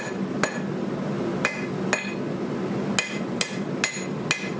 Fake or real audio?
real